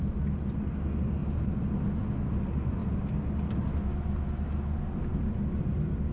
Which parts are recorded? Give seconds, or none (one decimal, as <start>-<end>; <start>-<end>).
0.0-6.1